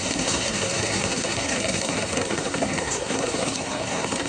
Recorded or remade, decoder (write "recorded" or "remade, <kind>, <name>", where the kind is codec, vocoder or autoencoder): remade, codec, SNAC